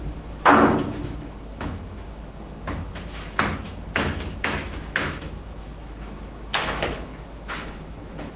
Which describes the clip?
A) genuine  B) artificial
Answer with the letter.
B